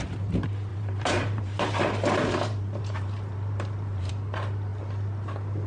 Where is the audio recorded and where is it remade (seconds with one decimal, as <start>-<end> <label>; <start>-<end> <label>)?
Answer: 0.0-0.7 recorded; 0.7-4.1 remade; 4.1-5.7 recorded